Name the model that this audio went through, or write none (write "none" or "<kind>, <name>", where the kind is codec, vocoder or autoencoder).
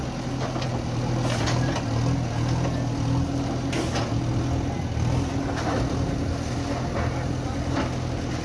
none